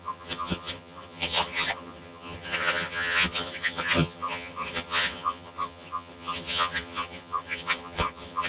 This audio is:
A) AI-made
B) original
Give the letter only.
A